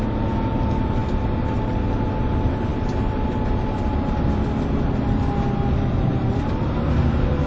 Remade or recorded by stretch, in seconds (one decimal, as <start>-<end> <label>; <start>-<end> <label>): 0.0-7.5 recorded